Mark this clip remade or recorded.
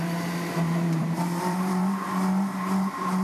remade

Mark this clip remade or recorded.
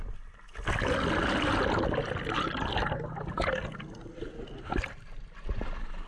recorded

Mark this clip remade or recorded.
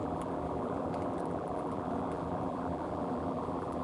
remade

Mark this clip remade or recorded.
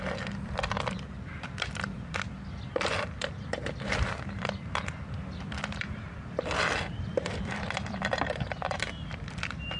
remade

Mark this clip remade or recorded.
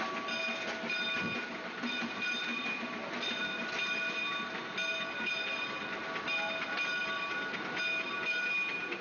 recorded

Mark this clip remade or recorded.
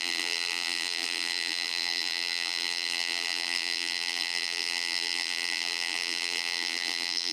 remade